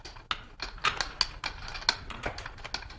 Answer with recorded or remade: recorded